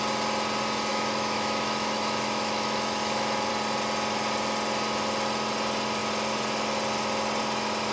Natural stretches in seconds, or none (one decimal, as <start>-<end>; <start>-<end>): 0.0-0.9; 3.5-7.9